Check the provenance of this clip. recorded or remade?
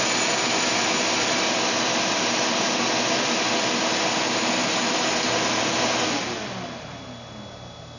recorded